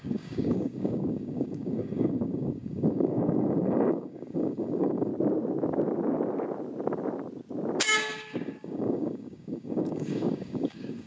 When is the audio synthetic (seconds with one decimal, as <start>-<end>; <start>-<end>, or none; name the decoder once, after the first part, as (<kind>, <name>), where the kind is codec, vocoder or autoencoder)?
0.0-5.1 (codec, DAC); 7.8-11.1